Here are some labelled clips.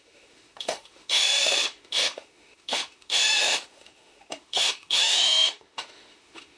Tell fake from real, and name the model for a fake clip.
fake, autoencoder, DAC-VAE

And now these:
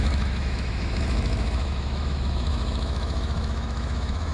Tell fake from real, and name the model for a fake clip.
fake, autoencoder, DAC-VAE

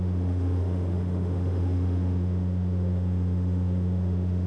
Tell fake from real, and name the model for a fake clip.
fake, autoencoder, DAC-VAE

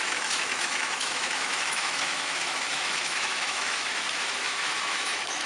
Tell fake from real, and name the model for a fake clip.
fake, autoencoder, DAC-VAE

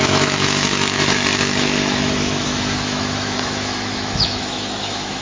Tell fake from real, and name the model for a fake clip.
fake, autoencoder, DAC-VAE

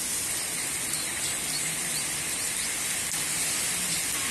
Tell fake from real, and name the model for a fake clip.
real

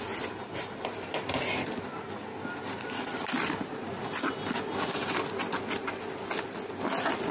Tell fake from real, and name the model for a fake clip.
real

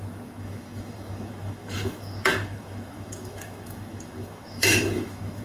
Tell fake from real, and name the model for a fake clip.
fake, autoencoder, DAC-VAE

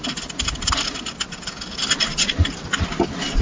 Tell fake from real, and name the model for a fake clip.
real